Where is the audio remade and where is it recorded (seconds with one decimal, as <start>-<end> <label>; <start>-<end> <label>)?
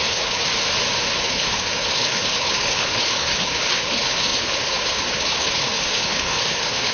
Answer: 0.0-0.4 remade; 0.4-1.2 recorded; 1.2-6.9 remade